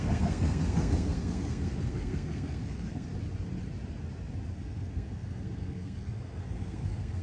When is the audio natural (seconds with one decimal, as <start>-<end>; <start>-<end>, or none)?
3.1-4.5